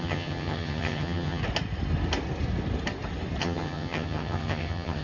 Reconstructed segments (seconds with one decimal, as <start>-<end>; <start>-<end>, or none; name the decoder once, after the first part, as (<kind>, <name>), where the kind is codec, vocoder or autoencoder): 0.0-1.4 (vocoder, HiFi-GAN); 3.4-5.0